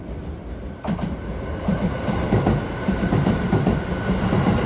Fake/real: real